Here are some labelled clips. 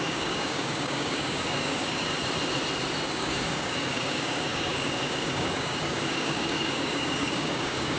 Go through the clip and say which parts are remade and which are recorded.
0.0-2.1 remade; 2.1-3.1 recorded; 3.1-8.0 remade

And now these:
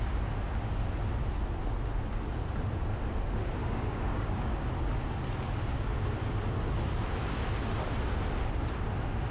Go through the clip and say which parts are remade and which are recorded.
0.0-3.6 recorded; 3.6-4.5 remade; 4.5-9.3 recorded

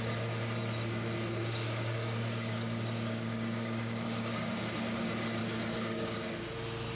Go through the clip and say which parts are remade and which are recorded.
0.0-1.4 recorded; 1.4-4.5 remade; 4.5-5.4 recorded; 5.4-6.5 remade; 6.5-7.0 recorded